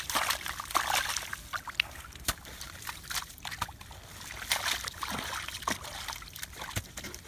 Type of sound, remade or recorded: recorded